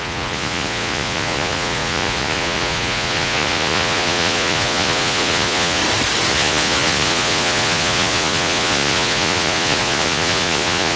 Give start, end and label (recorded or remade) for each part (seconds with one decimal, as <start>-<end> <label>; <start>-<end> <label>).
0.0-5.8 remade; 5.8-6.3 recorded; 6.3-11.0 remade